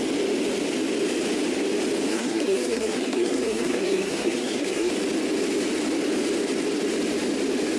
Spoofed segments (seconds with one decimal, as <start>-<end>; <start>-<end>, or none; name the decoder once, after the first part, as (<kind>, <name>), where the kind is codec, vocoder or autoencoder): 2.1-4.9 (codec, SNAC)